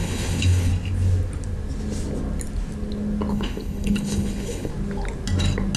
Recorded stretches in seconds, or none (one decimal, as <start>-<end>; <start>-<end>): 0.7-3.3; 4.7-5.8